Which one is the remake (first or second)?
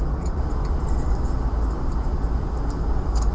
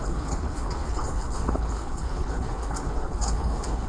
second